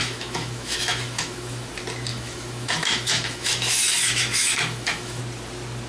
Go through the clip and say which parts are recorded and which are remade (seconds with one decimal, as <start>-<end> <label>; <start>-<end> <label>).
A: 0.0-1.7 remade; 1.7-2.1 recorded; 2.1-5.2 remade; 5.2-5.9 recorded